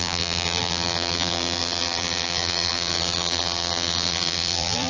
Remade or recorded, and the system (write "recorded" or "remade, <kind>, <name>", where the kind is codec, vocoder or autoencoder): remade, vocoder, BigVGAN v2